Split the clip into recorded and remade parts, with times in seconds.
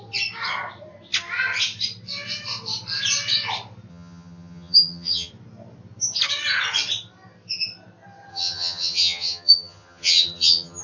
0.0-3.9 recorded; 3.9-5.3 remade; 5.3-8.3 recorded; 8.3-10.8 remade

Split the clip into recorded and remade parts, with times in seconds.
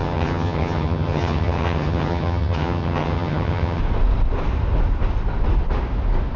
0.0-3.8 remade; 3.8-6.4 recorded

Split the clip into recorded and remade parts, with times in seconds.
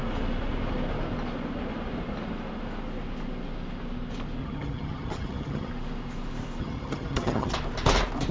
0.0-4.4 recorded; 4.4-5.7 remade; 5.7-6.6 recorded; 6.6-7.5 remade; 7.5-8.3 recorded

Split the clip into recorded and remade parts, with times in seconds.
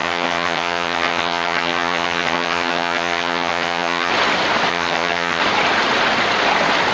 0.0-4.1 remade; 4.1-4.7 recorded; 4.7-5.4 remade; 5.4-6.9 recorded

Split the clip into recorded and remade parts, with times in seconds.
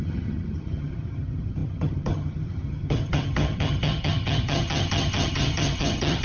0.0-6.2 remade